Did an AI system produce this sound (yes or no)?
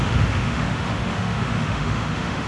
yes